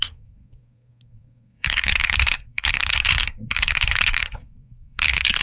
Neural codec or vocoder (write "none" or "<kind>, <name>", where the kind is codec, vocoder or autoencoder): codec, SNAC